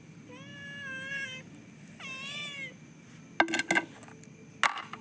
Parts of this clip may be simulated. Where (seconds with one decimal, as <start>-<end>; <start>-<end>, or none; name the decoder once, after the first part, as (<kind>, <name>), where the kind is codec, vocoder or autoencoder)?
none